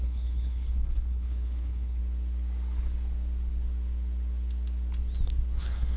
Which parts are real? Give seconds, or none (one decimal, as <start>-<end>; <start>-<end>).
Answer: 2.0-5.6